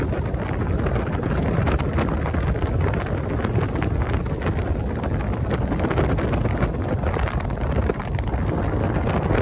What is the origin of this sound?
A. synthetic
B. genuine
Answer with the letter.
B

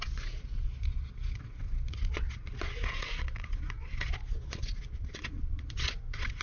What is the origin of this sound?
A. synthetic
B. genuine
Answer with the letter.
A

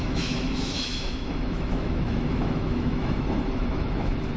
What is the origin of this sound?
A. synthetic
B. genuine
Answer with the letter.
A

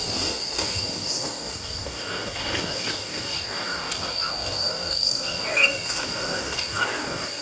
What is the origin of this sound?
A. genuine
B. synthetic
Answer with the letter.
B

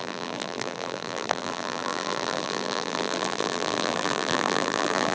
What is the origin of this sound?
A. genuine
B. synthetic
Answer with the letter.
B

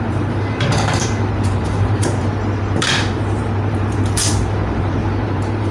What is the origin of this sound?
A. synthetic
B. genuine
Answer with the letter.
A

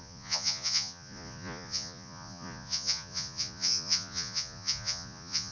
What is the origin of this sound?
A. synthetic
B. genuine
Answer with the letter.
A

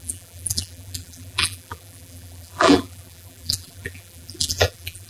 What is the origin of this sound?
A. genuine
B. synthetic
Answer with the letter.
B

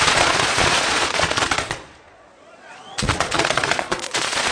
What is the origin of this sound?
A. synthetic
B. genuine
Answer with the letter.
A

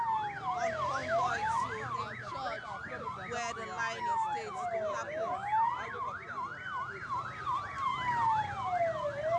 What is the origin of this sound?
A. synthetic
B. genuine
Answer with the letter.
B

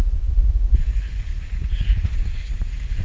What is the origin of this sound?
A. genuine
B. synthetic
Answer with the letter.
B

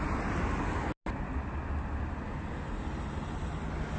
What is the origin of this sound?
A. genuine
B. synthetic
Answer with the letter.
A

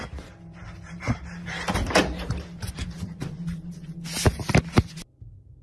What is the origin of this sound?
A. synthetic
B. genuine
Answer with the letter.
B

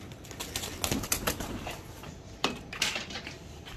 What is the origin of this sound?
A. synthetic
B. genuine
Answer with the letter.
B